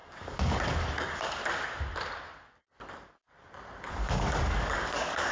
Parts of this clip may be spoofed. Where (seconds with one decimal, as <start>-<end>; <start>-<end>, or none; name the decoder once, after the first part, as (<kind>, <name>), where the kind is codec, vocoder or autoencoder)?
0.0-1.4 (codec, DAC); 3.9-5.3